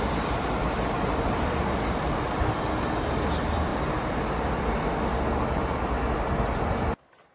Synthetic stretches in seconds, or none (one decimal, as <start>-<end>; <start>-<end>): none